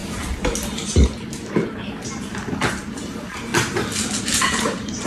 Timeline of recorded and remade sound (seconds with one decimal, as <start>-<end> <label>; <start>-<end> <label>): 0.0-2.7 recorded; 2.7-3.5 remade; 3.5-4.2 recorded; 4.2-5.1 remade

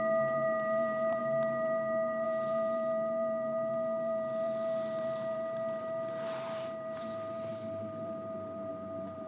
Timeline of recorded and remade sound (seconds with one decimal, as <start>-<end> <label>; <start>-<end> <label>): 0.0-9.3 remade

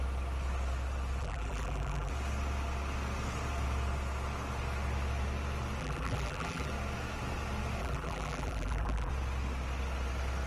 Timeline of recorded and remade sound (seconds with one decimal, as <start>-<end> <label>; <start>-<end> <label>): 0.0-1.2 recorded; 1.2-2.1 remade; 2.1-5.8 recorded; 5.8-6.7 remade; 6.7-7.8 recorded; 7.8-9.1 remade; 9.1-10.5 recorded

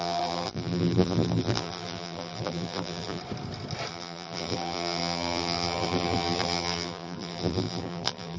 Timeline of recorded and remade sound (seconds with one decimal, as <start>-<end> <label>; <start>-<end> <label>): 0.0-3.2 remade; 3.2-3.9 recorded; 3.9-8.4 remade

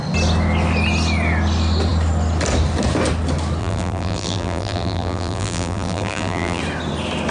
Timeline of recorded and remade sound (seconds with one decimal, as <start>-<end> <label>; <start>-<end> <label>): 0.0-3.6 recorded; 3.6-6.6 remade; 6.6-7.3 recorded

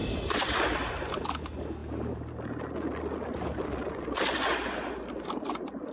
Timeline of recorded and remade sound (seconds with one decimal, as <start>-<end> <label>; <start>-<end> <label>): 0.0-0.9 remade; 0.9-1.8 recorded; 1.8-4.9 remade; 4.9-5.9 recorded

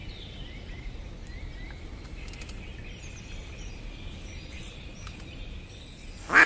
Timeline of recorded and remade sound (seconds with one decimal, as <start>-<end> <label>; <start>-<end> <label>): 0.0-0.8 remade; 0.8-6.5 recorded

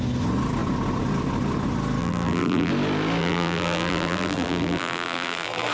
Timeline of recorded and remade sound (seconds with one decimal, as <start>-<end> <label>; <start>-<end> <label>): 0.0-2.0 recorded; 2.0-2.7 remade; 2.7-3.2 recorded; 3.2-5.7 remade